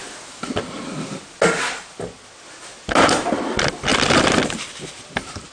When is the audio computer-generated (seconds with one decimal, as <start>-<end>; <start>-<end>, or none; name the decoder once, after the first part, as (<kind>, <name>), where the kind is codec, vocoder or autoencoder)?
none

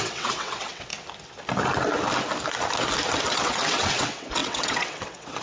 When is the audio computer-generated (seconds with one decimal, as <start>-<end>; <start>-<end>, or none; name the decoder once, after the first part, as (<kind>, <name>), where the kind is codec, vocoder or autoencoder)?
0.0-0.9 (vocoder, WaveNeXt); 3.2-5.4

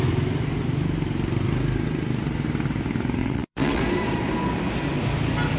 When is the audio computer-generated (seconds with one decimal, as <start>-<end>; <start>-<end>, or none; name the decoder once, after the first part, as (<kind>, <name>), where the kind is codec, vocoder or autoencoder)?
3.2-3.8 (vocoder, WaveNeXt)

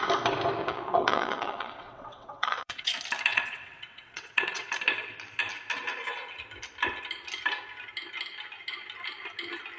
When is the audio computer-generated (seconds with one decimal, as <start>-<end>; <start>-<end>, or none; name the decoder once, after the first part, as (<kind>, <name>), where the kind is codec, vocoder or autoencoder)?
0.6-2.9 (vocoder, WaveNeXt); 3.3-4.7

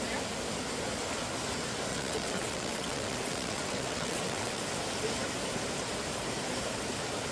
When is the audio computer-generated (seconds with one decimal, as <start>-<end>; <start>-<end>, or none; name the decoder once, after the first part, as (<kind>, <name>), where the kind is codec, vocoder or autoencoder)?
1.9-4.6 (vocoder, WaveNeXt)

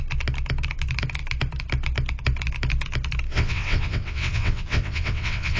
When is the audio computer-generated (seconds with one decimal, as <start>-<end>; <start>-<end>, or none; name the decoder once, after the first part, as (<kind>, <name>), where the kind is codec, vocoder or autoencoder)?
3.3-5.6 (vocoder, WaveNeXt)